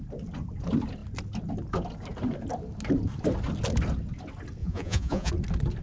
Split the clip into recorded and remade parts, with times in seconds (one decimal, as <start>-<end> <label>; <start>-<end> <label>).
0.0-4.6 recorded; 4.6-5.3 remade; 5.3-5.8 recorded